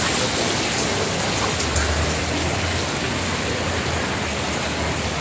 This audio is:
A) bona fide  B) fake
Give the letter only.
A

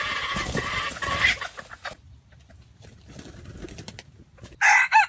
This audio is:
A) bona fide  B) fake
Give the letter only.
A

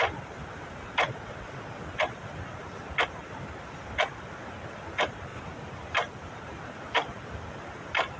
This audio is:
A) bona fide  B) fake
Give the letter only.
A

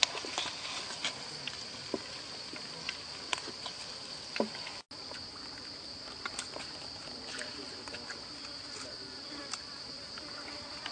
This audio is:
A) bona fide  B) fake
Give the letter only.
A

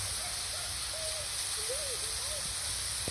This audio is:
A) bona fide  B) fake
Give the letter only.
A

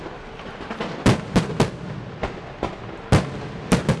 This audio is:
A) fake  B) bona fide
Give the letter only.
B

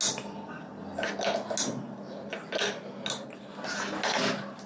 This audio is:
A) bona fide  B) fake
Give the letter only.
A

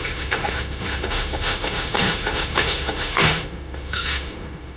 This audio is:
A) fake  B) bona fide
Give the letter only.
A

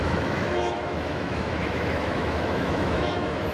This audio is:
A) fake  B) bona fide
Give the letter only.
A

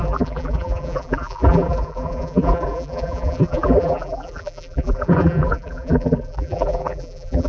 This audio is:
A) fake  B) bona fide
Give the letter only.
A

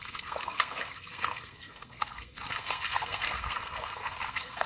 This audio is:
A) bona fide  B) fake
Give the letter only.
B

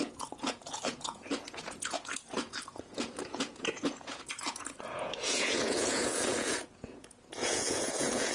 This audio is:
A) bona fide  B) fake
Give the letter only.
B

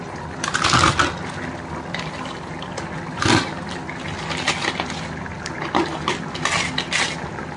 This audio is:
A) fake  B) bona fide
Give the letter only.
B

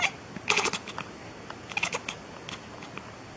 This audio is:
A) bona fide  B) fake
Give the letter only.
A